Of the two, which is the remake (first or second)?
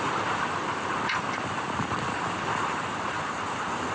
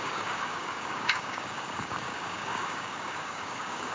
second